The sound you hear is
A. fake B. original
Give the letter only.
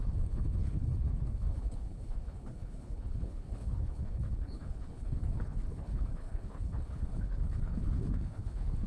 A